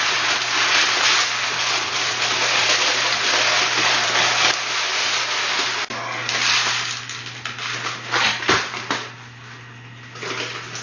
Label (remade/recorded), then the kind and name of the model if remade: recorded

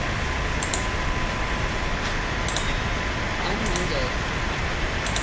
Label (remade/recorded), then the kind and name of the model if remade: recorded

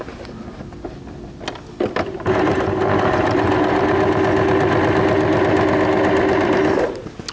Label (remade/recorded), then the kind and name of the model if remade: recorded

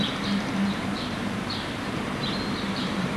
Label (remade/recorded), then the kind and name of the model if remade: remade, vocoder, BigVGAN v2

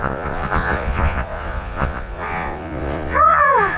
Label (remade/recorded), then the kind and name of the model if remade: remade, vocoder, Vocos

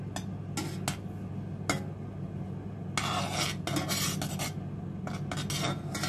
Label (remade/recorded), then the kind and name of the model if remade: recorded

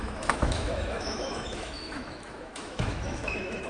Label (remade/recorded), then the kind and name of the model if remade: remade, autoencoder, DAC-VAE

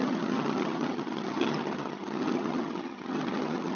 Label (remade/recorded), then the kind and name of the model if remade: remade, vocoder, HiFi-GAN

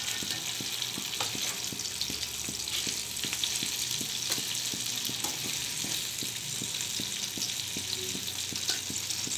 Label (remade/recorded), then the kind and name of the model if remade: recorded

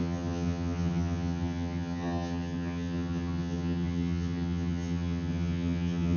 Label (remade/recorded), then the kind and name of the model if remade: remade, vocoder, HiFi-GAN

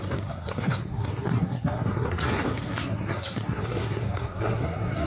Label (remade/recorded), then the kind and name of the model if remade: remade, codec, SNAC